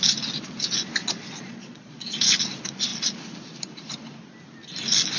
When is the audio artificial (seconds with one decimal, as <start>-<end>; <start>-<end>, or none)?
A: 1.0-2.3